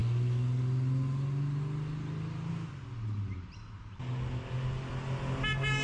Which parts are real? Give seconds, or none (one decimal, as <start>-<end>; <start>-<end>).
0.0-5.8